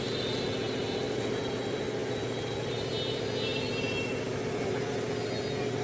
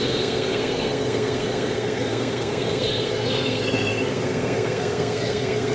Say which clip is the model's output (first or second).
second